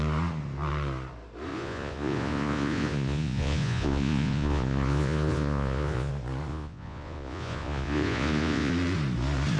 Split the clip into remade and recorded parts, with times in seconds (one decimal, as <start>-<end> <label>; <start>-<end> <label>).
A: 0.0-1.5 recorded; 1.5-6.1 remade; 6.1-6.5 recorded; 6.5-8.7 remade; 8.7-9.6 recorded